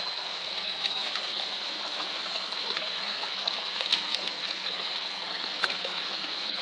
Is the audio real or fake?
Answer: fake